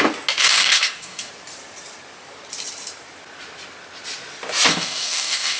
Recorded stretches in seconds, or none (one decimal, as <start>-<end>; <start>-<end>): 0.0-0.4; 1.3-4.7